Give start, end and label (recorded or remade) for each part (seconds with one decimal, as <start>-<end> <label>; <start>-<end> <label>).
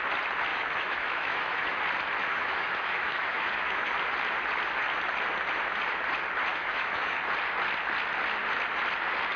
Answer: 0.0-0.5 recorded; 0.5-1.8 remade; 1.8-2.2 recorded; 2.2-3.9 remade; 3.9-6.5 recorded; 6.5-7.2 remade; 7.2-9.4 recorded